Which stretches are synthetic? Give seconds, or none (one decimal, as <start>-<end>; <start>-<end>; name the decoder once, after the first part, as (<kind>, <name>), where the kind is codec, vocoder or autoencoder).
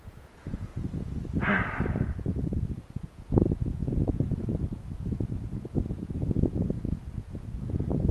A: 0.0-0.7 (vocoder, Vocos); 1.9-8.1